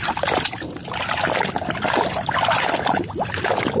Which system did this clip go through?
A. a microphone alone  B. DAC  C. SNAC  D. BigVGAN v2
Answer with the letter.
A